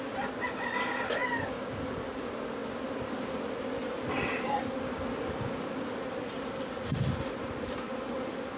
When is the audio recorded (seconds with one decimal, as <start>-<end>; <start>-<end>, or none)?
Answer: 0.0-1.2; 2.0-8.6